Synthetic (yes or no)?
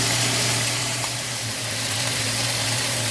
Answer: yes